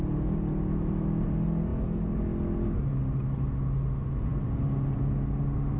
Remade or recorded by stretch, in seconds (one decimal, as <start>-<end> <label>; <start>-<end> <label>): 0.0-5.8 recorded